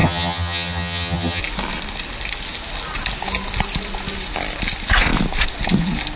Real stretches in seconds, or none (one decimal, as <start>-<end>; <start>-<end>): 1.4-6.2

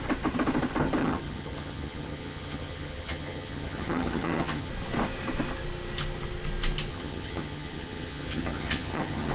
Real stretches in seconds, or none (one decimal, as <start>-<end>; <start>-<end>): 0.0-1.0; 4.7-6.9